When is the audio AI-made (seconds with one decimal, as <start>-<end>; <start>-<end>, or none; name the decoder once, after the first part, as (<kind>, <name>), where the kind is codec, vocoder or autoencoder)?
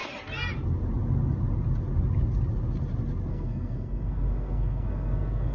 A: 3.3-5.5 (codec, SNAC)